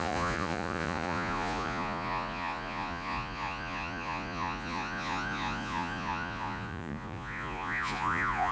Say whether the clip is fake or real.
fake